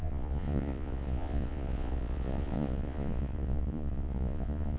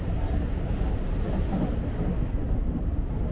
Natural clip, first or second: second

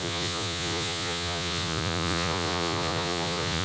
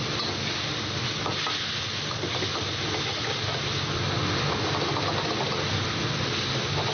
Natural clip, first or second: second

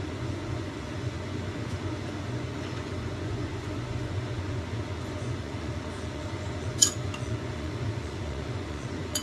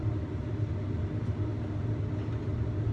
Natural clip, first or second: second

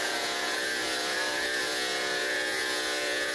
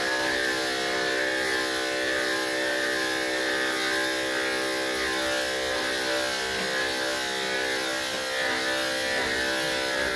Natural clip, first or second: second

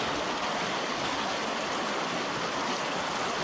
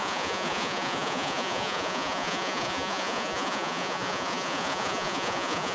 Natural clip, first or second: first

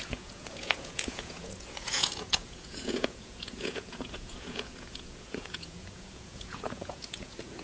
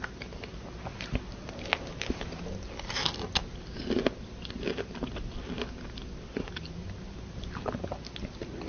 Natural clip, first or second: second